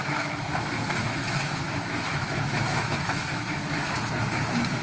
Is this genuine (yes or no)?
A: no